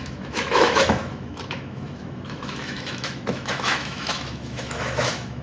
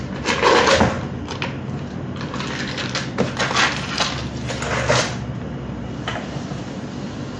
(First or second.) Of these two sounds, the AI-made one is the first